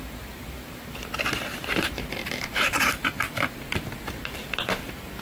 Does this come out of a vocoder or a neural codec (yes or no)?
yes